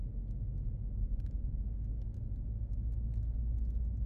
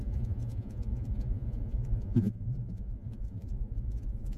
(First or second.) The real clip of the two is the first